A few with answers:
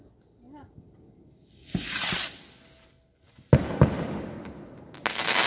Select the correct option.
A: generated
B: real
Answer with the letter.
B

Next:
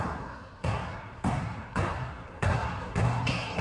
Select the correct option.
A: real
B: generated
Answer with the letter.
B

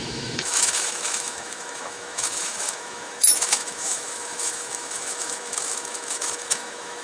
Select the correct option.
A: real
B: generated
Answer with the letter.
B